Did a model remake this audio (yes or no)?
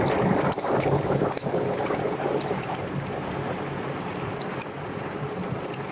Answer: no